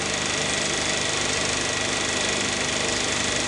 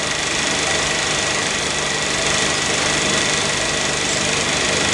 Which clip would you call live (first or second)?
first